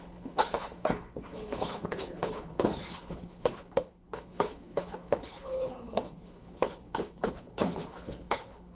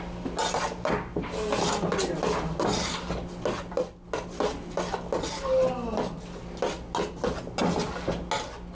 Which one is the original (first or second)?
second